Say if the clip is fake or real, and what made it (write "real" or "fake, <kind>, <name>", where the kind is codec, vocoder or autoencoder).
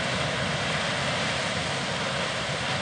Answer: real